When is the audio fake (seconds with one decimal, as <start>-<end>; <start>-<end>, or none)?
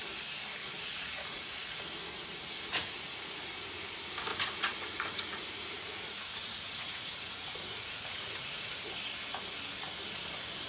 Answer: 0.6-1.8; 2.7-3.5; 4.3-8.7